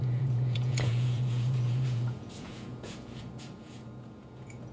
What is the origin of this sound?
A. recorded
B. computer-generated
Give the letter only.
B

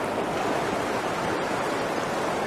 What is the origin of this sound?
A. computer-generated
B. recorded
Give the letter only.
B